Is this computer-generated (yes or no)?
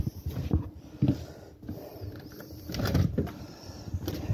yes